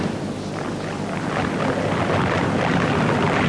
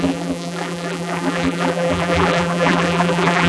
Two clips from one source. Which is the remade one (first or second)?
second